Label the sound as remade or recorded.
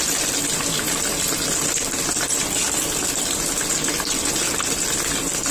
recorded